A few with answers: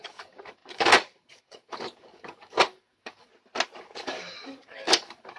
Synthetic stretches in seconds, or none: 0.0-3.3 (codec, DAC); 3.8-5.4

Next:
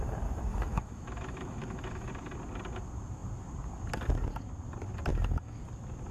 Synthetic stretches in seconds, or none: 0.5-2.1 (autoencoder, DAC-VAE); 5.1-5.6

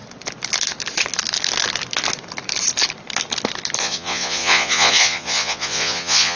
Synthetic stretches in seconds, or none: 3.8-6.4 (vocoder, Vocos)

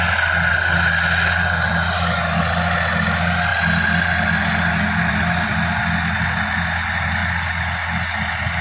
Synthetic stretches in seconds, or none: none

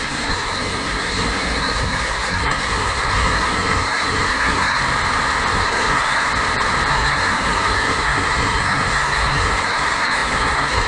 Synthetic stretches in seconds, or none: 0.0-4.8 (codec, SNAC); 5.5-6.3; 6.9-10.9

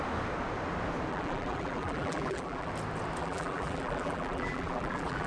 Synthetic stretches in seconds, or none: 1.1-2.7 (vocoder, BigVGAN v2); 3.2-5.3